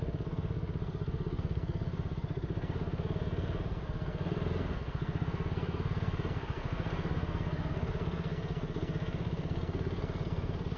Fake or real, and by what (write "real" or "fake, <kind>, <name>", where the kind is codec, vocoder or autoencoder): fake, codec, SNAC